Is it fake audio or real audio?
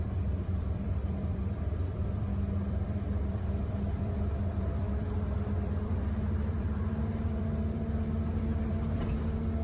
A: fake